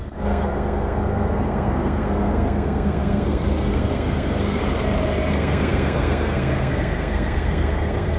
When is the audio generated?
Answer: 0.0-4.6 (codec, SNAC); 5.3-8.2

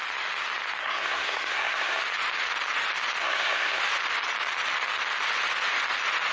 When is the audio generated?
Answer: 0.8-2.0 (codec, SNAC); 3.2-3.8

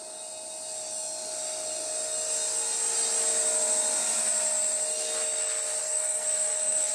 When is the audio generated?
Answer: 5.8-6.9 (codec, SNAC)

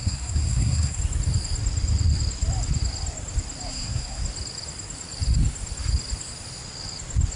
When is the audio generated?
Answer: 0.0-1.0 (codec, SNAC); 3.7-4.2